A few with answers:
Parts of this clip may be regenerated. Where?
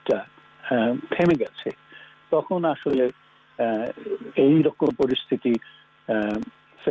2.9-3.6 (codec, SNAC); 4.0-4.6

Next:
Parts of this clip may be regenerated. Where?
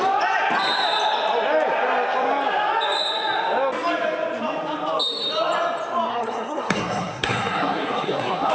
6.1-8.5 (codec, SNAC)